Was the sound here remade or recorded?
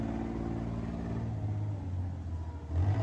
recorded